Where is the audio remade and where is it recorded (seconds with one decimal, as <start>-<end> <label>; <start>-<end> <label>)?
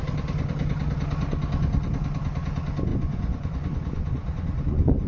0.0-2.9 recorded; 2.9-5.1 remade